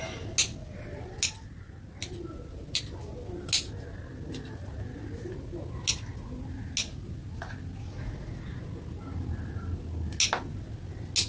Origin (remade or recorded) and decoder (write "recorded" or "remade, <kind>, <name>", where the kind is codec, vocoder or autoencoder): recorded